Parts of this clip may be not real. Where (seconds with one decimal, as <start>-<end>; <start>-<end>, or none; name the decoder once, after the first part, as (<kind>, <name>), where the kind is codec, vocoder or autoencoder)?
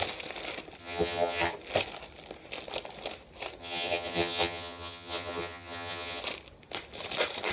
0.8-1.5 (vocoder, HiFi-GAN); 3.6-6.2